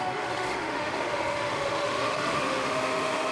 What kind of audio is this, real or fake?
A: fake